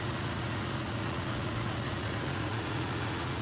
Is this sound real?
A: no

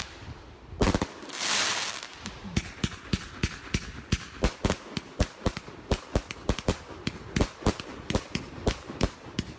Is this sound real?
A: yes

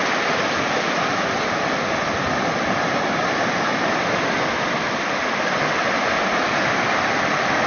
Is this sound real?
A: yes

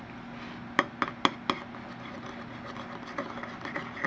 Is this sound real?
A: yes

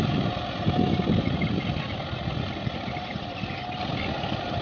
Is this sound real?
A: yes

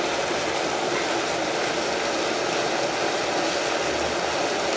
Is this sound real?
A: yes